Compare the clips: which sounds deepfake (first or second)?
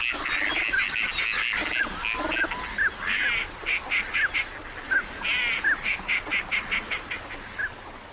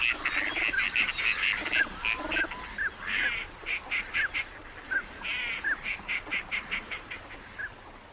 second